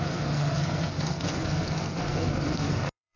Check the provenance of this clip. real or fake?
fake